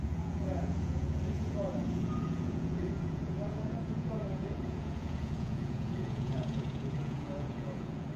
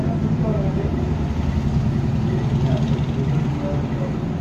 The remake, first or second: first